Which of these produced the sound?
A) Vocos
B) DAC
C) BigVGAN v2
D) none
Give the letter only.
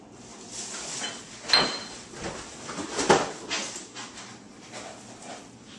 D